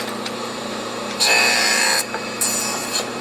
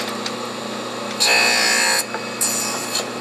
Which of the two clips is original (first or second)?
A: second